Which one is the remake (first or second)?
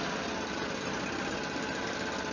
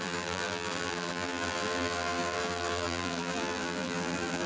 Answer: second